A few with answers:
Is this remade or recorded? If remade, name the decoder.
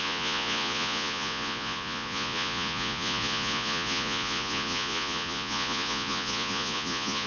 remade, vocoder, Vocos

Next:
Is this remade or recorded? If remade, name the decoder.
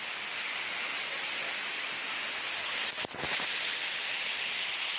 recorded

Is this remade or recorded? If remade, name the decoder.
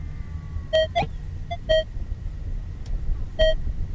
recorded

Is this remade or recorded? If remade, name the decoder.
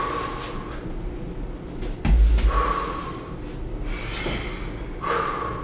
recorded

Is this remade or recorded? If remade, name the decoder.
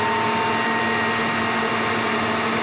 recorded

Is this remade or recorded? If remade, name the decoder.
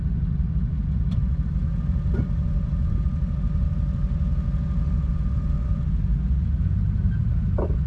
recorded